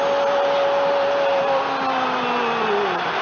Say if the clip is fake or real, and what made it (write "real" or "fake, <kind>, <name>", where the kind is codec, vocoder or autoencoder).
real